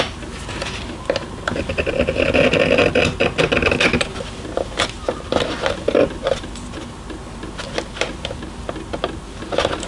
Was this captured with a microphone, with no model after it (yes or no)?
yes